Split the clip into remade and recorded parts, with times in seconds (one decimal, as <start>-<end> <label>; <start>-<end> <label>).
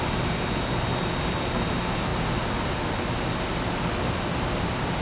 0.0-5.0 recorded